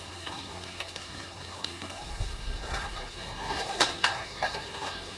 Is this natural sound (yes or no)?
no